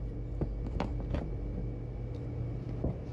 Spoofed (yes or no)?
yes